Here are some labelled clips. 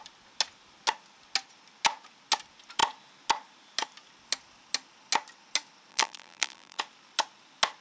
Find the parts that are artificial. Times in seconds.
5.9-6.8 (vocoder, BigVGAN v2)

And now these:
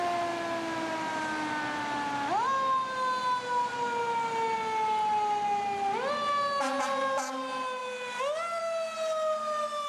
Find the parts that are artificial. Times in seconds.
none

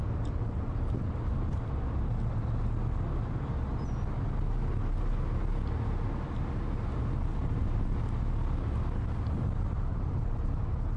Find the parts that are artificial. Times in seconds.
7.3-7.9 (vocoder, BigVGAN v2); 9.9-10.6

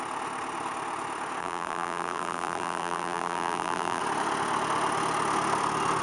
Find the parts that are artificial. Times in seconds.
1.4-4.0 (vocoder, BigVGAN v2)

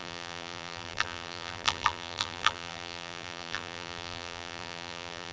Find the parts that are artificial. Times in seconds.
0.0-5.3 (vocoder, BigVGAN v2)

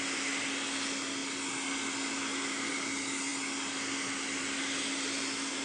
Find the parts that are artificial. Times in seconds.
none

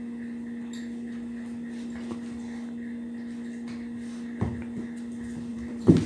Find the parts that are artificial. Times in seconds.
5.5-6.1 (vocoder, BigVGAN v2)